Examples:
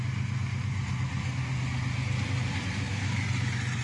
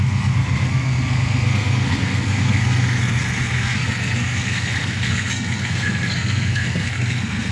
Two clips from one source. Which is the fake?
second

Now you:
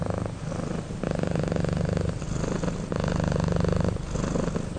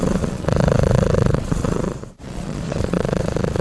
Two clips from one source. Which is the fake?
second